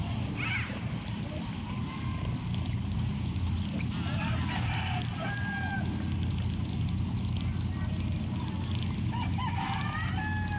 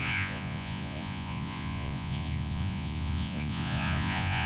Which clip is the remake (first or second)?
second